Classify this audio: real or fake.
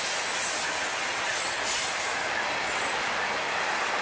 real